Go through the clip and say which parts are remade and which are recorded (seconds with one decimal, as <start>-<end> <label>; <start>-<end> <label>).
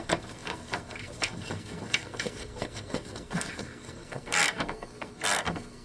0.0-5.8 remade